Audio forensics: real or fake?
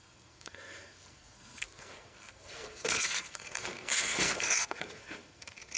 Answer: fake